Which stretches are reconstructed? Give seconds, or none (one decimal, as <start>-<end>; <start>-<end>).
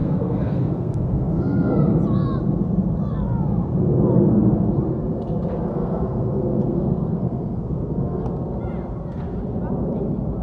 0.0-1.7; 5.7-8.2